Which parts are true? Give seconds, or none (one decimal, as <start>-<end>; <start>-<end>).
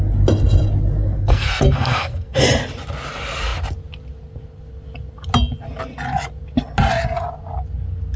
0.0-1.0; 2.4-8.2